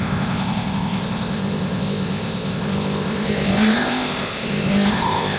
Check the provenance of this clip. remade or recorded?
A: remade